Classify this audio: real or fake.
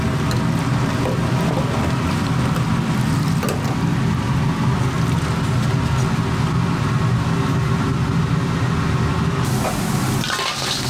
real